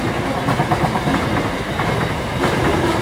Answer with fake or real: real